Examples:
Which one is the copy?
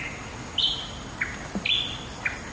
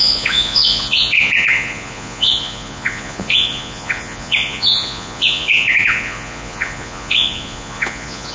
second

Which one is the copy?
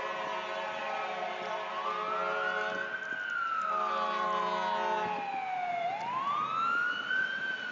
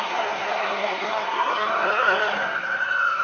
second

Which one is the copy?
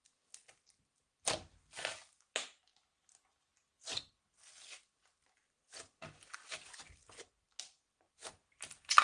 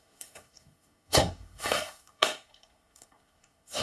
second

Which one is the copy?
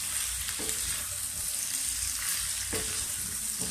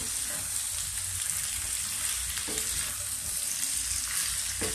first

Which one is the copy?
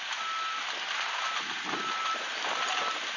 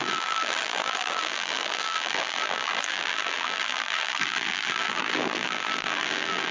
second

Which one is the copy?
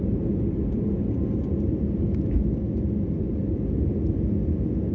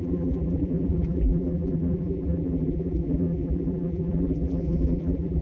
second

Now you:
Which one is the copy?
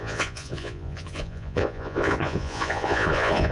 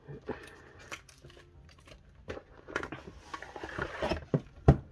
first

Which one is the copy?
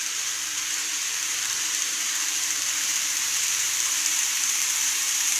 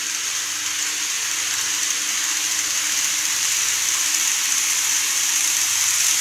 first